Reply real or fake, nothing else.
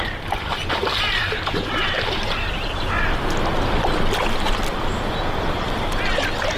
real